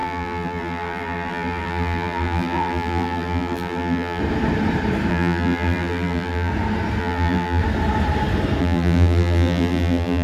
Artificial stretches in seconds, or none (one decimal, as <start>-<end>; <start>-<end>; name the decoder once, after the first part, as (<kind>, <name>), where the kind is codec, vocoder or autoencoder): 0.0-4.2 (vocoder, BigVGAN v2); 5.1-6.5; 7.0-7.6; 8.6-10.2